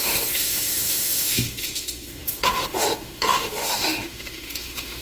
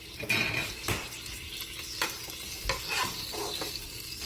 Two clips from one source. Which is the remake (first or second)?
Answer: first